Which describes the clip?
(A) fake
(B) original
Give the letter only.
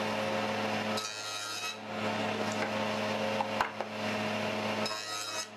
B